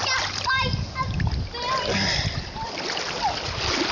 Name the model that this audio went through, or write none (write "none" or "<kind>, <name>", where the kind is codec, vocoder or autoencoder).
none